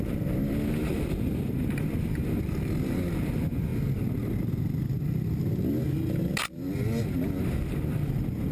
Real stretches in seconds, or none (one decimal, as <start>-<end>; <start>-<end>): 0.0-0.9; 1.7-8.5